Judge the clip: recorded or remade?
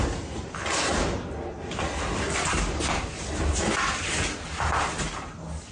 recorded